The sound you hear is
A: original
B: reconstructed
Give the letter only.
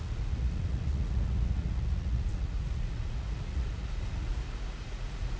B